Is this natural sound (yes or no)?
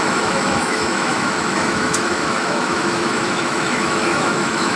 no